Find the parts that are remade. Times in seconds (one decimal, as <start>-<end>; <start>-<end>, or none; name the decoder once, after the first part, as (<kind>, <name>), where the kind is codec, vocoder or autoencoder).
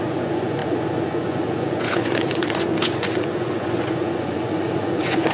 0.0-5.3 (vocoder, Vocos)